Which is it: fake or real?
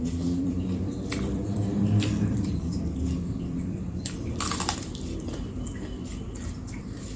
fake